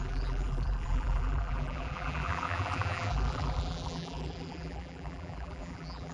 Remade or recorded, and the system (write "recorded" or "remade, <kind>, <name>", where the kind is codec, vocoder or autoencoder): remade, vocoder, BigVGAN v2